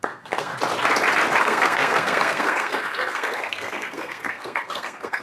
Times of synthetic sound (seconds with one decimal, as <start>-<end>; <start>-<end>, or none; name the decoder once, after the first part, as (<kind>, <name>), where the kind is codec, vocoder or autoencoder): 0.0-0.5 (codec, SNAC); 1.4-5.2